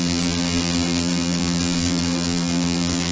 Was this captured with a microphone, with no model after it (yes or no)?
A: no